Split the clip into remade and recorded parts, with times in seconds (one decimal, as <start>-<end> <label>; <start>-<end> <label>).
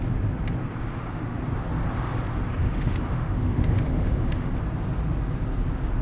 0.0-0.9 recorded; 0.9-1.4 remade; 1.4-2.6 recorded; 2.6-4.5 remade; 4.5-6.0 recorded